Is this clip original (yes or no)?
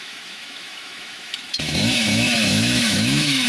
no